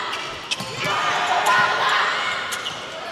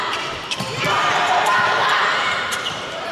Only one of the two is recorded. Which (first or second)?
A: first